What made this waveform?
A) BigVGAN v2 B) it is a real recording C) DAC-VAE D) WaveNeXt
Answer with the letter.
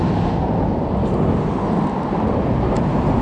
B